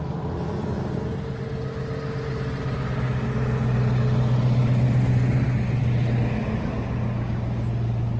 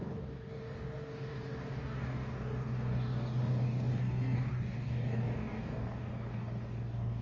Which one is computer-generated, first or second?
second